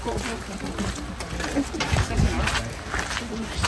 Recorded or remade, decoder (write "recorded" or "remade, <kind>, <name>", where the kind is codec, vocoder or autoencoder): recorded